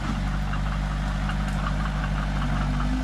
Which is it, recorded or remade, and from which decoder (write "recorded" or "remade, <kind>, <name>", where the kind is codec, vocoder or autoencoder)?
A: recorded